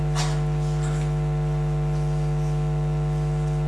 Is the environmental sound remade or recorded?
recorded